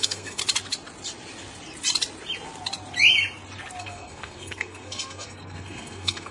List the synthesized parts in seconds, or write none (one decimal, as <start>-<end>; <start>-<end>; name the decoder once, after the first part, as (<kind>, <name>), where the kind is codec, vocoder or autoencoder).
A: 0.0-0.4 (codec, SNAC); 3.8-6.3

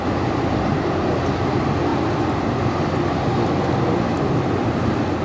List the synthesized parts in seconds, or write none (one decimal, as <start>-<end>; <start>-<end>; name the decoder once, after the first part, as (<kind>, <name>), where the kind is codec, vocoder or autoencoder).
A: none

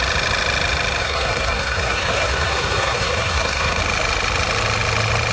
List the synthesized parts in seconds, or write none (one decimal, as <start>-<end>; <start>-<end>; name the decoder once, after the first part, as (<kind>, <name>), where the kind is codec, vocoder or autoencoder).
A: 1.0-3.8 (codec, SNAC)

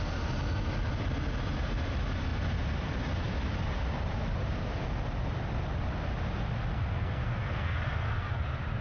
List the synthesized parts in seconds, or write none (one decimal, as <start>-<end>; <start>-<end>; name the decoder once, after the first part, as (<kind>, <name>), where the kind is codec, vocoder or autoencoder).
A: 6.7-8.4 (codec, SNAC)

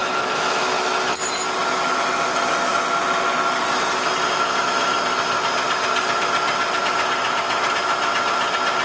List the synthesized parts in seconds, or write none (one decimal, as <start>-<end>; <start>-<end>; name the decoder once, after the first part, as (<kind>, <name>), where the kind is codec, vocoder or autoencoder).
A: 0.0-1.2 (autoencoder, DAC-VAE)

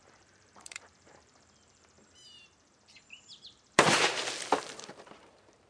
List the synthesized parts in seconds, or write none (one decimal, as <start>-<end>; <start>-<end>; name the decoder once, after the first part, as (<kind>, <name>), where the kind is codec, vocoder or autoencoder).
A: 0.0-4.2 (vocoder, BigVGAN v2); 4.7-5.7

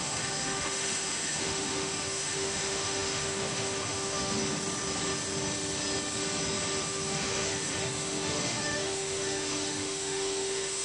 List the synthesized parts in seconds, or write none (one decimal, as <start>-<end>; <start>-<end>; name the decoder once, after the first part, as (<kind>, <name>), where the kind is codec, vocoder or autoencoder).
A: 0.0-4.4 (autoencoder, DAC-VAE); 6.8-10.8